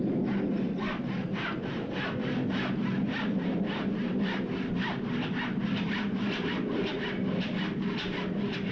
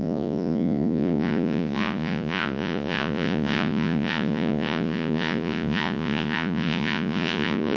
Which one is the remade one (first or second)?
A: second